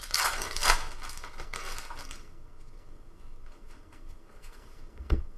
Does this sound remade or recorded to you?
remade